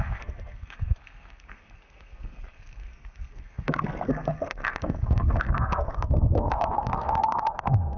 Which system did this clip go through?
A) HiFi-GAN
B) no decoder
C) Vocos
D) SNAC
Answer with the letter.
D